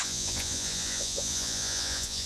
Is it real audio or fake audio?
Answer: fake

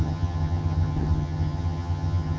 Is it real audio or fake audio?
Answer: fake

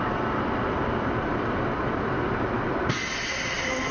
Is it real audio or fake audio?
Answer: fake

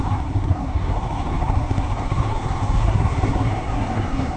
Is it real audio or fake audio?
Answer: fake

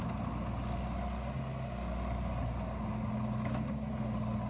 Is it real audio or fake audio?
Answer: real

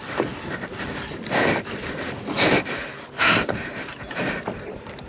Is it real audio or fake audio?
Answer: fake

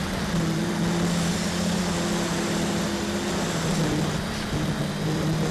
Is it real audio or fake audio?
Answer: real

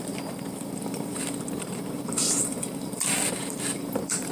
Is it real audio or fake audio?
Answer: fake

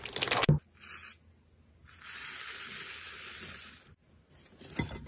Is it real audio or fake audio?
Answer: real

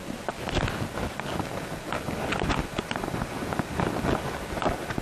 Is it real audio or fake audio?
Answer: real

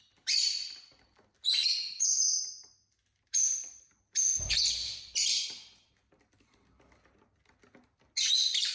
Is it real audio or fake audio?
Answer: real